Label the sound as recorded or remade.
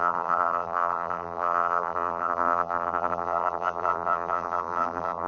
remade